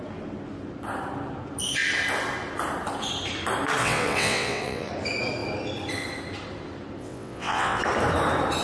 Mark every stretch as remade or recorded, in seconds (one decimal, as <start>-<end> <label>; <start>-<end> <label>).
0.0-3.8 recorded; 3.8-4.9 remade; 4.9-7.0 recorded; 7.0-7.8 remade; 7.8-8.6 recorded

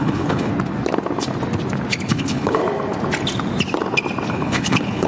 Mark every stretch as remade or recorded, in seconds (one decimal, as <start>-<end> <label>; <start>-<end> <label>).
0.0-0.5 remade; 0.5-2.1 recorded; 2.1-2.6 remade; 2.6-4.3 recorded; 4.3-5.1 remade